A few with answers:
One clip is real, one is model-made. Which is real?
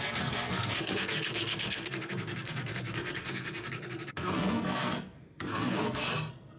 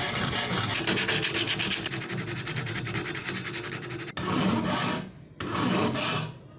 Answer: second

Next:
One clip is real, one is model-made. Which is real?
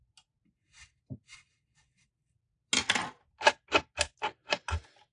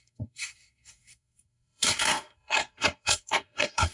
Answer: first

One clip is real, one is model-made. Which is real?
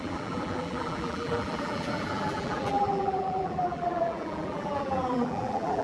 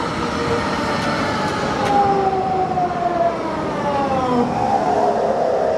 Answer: second